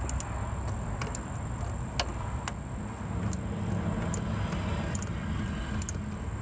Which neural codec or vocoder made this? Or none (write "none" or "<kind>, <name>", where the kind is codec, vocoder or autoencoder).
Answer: none